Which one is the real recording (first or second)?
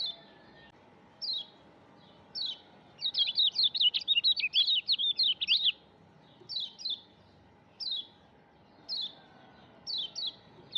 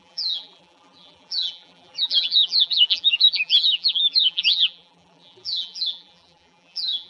first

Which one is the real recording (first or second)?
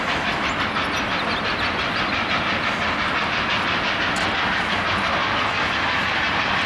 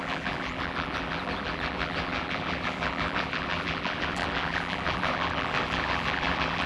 first